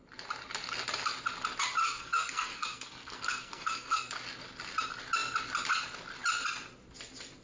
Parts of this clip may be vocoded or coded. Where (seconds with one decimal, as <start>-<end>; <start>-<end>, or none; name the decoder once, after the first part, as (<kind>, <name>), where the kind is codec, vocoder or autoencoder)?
1.8-4.1 (codec, SNAC)